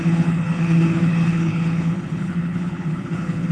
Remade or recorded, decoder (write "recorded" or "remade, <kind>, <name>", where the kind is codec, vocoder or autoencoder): remade, codec, HILCodec